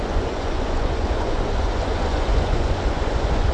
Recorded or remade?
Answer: remade